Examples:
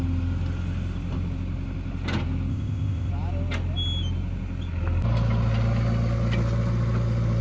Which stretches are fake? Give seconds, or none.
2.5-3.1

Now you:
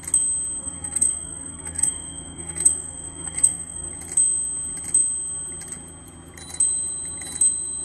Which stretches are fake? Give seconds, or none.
0.6-3.9